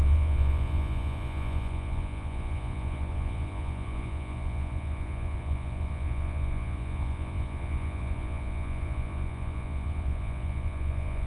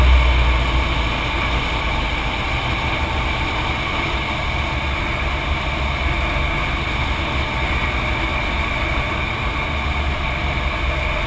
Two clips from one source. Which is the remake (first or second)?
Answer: first